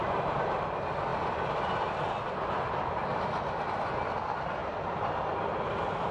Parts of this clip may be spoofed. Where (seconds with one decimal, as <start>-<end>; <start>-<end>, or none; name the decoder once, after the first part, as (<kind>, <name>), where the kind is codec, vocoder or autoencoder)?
none